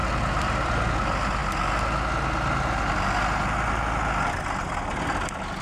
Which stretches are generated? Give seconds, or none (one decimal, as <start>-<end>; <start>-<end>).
0.0-0.9